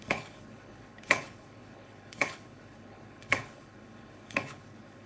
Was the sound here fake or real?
fake